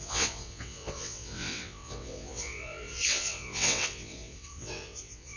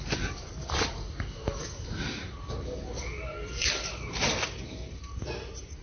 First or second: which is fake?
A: first